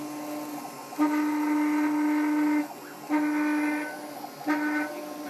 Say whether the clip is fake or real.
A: real